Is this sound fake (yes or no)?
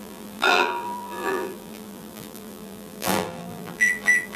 yes